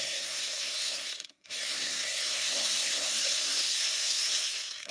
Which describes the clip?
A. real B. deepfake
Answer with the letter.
B